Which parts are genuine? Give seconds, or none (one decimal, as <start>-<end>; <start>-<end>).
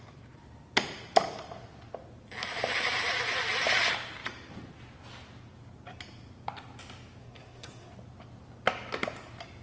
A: 0.0-7.2; 7.9-9.6